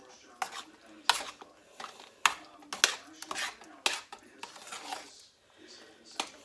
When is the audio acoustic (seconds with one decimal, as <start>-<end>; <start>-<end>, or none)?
0.0-6.4